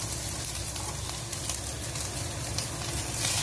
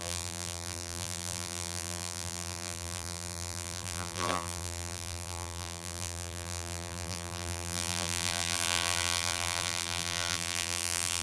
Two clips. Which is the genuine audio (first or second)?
first